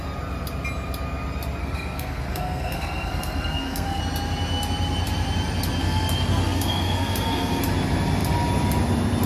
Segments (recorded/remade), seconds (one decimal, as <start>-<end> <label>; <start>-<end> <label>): 0.0-1.6 recorded; 1.6-4.0 remade; 4.0-5.8 recorded; 5.8-7.6 remade; 7.6-9.3 recorded